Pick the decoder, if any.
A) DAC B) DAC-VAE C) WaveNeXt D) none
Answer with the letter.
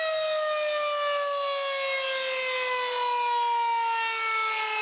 D